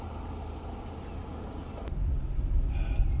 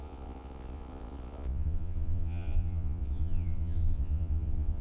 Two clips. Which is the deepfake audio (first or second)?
second